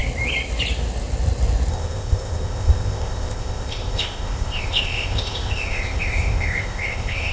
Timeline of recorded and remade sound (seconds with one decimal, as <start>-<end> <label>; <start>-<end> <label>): 0.0-1.7 recorded; 1.7-7.3 remade